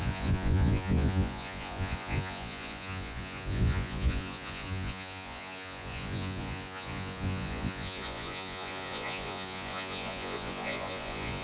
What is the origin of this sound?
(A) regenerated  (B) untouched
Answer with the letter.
A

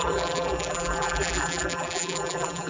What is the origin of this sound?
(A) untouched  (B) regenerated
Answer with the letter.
B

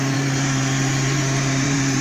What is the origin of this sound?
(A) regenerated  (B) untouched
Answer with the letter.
A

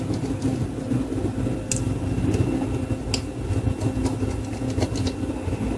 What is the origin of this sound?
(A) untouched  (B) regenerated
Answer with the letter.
A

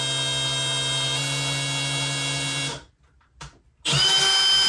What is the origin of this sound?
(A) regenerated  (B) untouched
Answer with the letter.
B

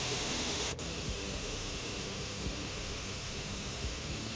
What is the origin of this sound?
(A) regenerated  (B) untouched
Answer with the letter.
A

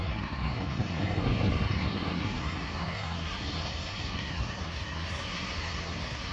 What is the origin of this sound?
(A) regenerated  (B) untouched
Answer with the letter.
A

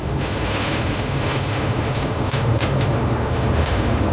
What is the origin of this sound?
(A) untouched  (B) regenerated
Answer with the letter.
B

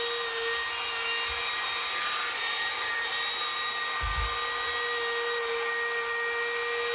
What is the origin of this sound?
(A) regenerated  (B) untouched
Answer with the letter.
B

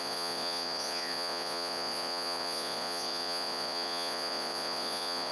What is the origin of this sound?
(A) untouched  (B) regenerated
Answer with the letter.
B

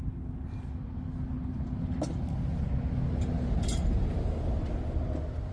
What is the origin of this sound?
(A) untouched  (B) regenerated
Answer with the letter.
A